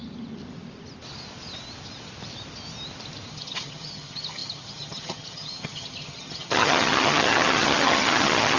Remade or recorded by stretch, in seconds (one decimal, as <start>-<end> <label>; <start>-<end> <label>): 0.0-3.3 recorded; 3.3-8.6 remade